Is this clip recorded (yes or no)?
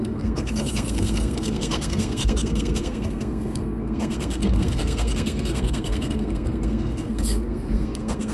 no